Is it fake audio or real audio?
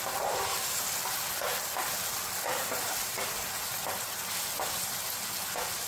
real